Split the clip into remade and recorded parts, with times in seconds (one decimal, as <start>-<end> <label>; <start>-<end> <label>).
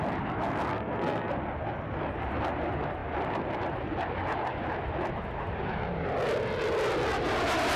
0.0-0.7 recorded; 0.7-1.3 remade; 1.3-7.8 recorded